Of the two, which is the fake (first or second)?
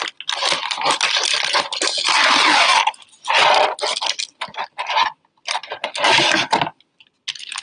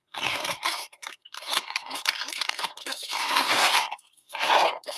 second